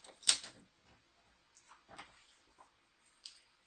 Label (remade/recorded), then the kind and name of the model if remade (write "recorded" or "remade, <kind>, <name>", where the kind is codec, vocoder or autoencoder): recorded